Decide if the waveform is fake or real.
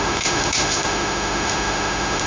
fake